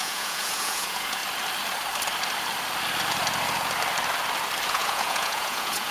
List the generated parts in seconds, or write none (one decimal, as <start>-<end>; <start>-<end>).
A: 0.0-1.2; 4.7-5.9